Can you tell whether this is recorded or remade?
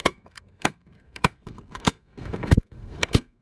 remade